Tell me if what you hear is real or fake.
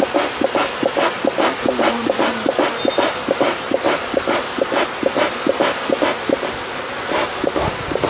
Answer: real